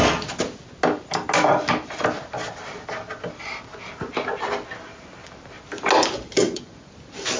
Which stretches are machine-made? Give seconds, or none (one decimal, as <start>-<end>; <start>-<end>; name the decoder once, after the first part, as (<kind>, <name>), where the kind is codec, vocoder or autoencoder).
6.4-6.9 (vocoder, Vocos)